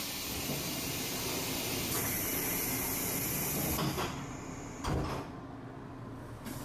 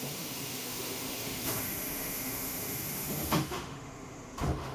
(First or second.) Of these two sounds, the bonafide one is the first